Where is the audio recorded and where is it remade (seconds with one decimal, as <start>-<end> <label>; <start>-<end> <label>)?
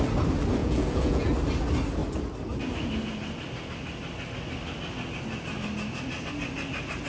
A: 0.0-0.6 recorded; 0.6-1.3 remade; 1.3-7.1 recorded